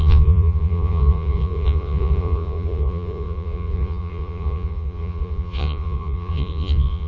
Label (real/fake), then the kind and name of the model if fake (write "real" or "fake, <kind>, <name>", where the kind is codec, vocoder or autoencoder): fake, vocoder, Vocos